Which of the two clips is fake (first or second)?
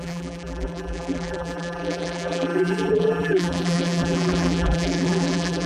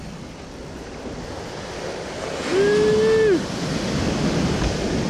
first